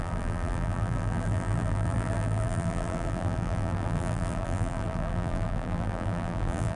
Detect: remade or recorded remade